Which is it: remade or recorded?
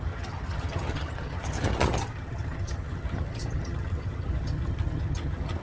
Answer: remade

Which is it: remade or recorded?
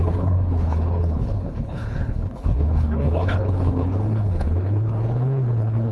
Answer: remade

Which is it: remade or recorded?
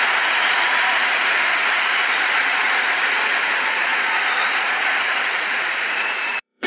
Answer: remade